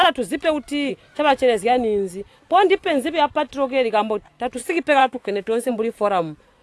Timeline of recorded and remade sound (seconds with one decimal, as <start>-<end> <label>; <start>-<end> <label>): 0.0-5.0 recorded; 5.0-5.7 remade; 5.7-6.6 recorded